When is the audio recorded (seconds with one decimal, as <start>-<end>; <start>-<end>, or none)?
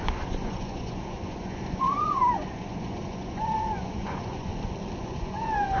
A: 4.5-5.0